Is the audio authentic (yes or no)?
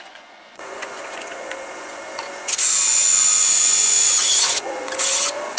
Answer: no